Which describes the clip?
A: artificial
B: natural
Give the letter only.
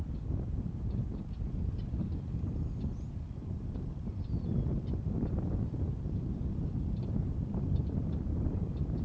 B